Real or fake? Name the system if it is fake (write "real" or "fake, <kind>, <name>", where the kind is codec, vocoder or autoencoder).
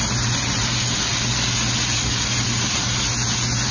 real